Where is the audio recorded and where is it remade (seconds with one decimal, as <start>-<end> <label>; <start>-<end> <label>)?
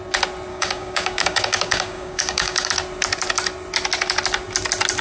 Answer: 0.0-0.5 recorded; 0.5-2.7 remade; 2.7-5.0 recorded